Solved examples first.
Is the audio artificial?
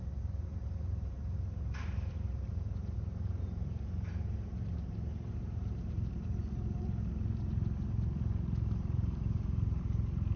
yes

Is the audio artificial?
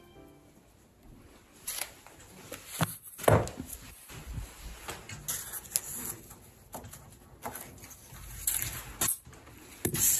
no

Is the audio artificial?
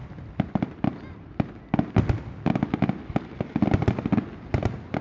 no